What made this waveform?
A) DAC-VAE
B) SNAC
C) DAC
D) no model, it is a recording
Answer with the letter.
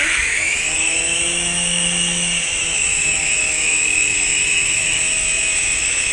A